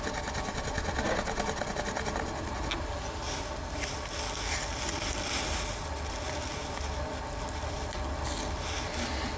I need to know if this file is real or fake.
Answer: real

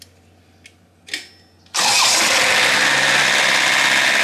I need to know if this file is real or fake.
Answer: real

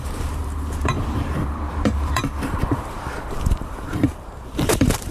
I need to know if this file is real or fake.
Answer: fake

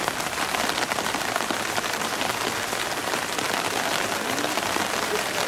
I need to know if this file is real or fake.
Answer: fake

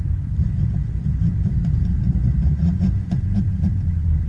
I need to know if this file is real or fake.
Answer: fake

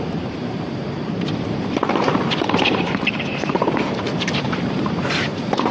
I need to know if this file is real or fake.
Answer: fake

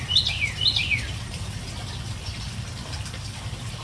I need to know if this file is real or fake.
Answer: real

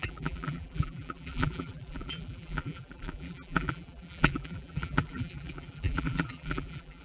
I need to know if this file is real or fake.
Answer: fake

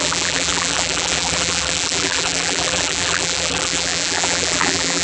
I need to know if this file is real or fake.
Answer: fake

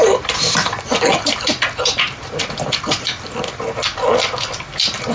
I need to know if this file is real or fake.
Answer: fake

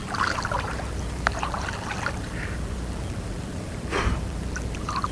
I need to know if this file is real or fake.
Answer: fake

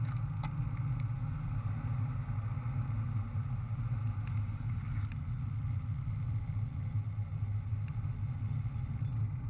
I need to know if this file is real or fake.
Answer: real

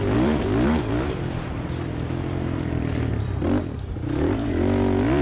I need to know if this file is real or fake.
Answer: fake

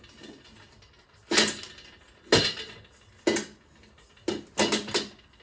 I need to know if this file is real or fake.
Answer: real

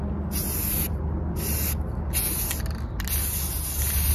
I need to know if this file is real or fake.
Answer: real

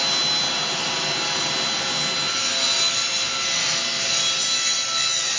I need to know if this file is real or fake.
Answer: real